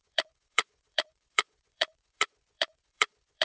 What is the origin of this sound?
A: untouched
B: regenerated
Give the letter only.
B